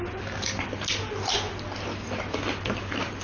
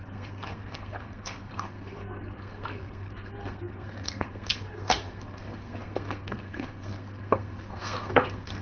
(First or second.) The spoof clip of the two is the second